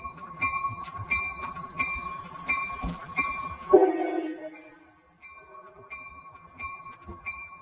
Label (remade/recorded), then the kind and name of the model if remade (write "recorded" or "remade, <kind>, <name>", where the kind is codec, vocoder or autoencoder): remade, vocoder, BigVGAN v2